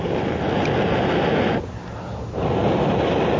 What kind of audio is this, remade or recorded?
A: recorded